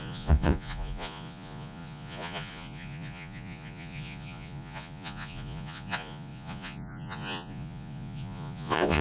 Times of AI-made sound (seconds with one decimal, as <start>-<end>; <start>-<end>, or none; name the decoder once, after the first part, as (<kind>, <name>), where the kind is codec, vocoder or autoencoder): 0.0-9.0 (vocoder, Vocos)